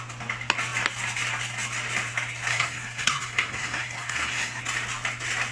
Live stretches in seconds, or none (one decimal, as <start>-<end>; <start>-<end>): 0.0-2.5; 4.6-5.5